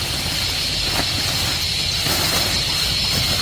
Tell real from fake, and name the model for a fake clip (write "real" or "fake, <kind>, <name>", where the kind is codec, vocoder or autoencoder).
fake, vocoder, BigVGAN v2